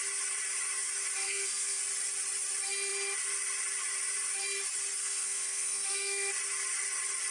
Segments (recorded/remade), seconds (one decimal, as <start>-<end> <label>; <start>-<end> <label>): 0.0-1.2 recorded; 1.2-1.8 remade; 1.8-5.0 recorded; 5.0-6.3 remade; 6.3-7.3 recorded